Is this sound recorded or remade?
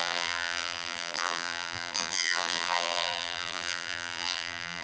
remade